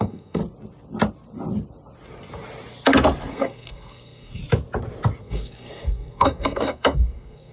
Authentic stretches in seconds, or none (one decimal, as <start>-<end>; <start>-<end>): 0.4-3.3; 4.4-5.2